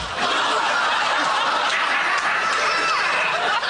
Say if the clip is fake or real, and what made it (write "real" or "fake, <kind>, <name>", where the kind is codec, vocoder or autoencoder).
real